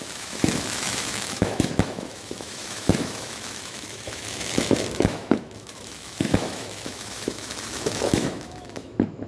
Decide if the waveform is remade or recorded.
remade